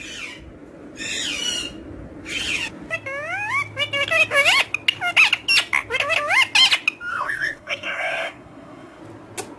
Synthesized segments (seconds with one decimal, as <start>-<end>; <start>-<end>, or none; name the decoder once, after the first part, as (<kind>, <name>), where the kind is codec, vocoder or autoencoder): 7.1-9.0 (codec, SNAC)